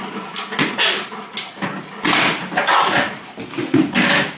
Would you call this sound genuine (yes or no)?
yes